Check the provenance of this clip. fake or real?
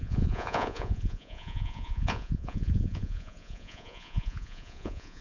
fake